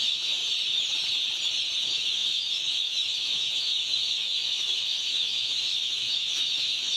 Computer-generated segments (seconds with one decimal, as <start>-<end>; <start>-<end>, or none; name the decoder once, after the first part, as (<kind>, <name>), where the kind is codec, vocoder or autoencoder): 0.0-0.4 (autoencoder, DAC-VAE); 1.8-7.0